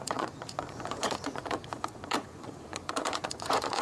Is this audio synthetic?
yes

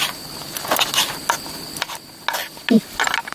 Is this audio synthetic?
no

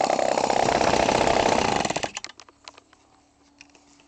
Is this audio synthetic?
no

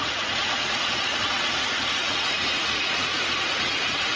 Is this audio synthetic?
yes